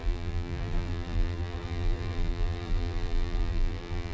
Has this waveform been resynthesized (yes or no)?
yes